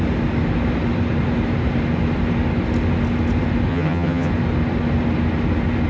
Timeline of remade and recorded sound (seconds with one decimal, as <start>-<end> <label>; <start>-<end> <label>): 0.0-3.7 recorded; 3.7-4.3 remade; 4.3-5.9 recorded